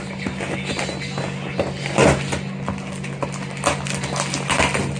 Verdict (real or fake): real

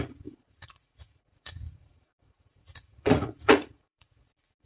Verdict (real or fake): fake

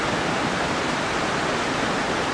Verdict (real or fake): real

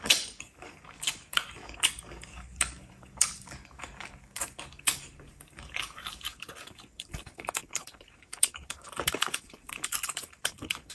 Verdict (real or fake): fake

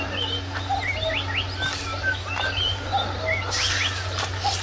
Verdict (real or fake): real